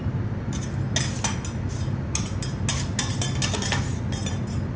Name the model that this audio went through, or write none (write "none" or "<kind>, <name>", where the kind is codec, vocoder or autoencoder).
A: none